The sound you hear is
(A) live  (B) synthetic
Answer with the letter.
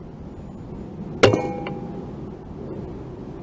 A